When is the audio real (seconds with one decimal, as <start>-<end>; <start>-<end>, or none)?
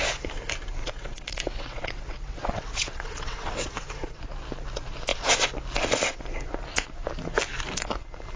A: 0.0-0.8; 4.2-8.4